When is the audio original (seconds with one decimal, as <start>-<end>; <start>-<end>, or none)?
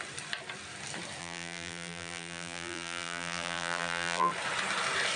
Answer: 0.0-1.2; 4.3-5.2